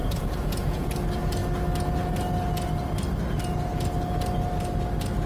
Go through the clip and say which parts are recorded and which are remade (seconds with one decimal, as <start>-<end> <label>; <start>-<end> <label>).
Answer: 0.0-0.9 remade; 0.9-5.3 recorded